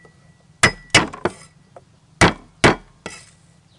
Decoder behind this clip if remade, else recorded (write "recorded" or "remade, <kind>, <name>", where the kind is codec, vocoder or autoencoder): recorded